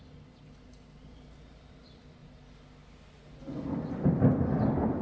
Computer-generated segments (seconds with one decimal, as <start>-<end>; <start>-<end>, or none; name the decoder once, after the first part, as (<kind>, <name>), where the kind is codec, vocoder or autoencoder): none